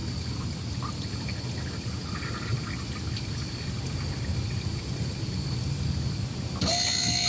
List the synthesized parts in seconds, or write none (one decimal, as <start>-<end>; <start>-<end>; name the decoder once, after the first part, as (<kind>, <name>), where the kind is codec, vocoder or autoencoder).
none